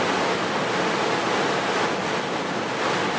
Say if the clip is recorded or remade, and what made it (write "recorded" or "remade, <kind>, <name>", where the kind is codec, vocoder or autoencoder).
recorded